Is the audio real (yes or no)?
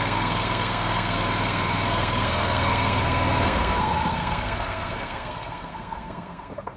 no